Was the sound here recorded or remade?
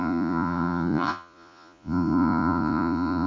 remade